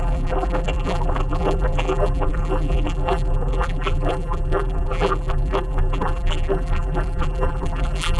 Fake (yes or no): yes